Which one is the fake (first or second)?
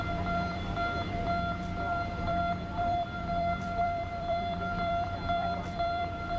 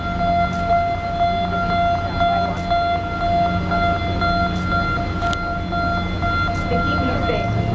first